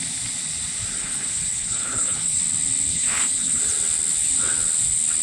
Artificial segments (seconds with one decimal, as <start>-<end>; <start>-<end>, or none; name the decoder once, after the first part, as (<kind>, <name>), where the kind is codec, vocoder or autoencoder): 1.0-2.4 (codec, HILCodec); 2.9-3.6